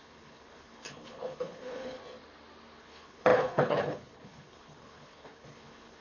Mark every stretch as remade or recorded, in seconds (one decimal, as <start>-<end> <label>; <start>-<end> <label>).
0.0-2.0 remade; 2.0-2.8 recorded; 2.8-6.0 remade